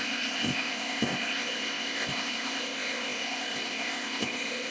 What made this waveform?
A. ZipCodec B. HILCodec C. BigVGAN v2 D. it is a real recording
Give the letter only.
A